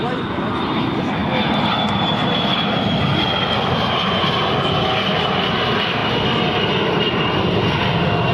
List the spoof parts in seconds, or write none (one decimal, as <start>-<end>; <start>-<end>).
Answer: none